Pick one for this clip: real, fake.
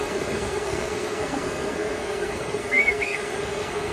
fake